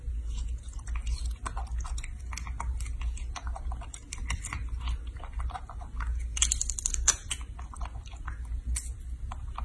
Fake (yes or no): no